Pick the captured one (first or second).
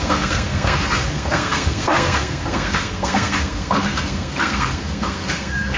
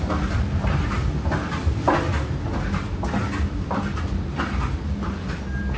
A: second